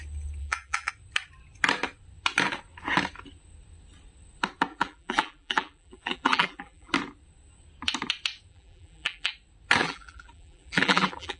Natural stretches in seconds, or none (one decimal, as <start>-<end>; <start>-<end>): 0.0-0.4; 0.9-4.7; 6.9-8.5; 9.3-9.8